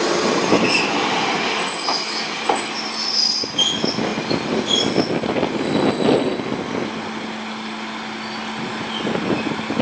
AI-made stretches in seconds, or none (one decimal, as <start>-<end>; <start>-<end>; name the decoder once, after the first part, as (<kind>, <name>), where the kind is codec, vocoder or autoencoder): none